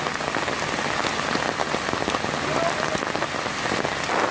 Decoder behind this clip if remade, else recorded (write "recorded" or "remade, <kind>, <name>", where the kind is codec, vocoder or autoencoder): recorded